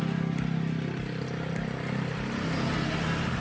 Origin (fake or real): real